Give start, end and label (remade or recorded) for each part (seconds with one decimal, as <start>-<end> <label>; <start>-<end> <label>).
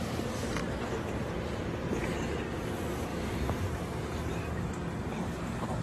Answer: 0.0-0.6 recorded; 0.6-1.9 remade; 1.9-3.1 recorded; 3.1-4.7 remade; 4.7-5.8 recorded